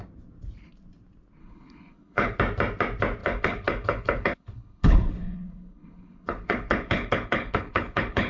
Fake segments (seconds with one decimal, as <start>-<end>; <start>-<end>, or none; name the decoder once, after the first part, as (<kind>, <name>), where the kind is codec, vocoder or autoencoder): 1.4-2.4 (codec, HILCodec); 3.2-8.3